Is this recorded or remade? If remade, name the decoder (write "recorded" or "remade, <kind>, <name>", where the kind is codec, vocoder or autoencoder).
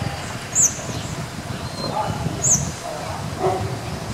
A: recorded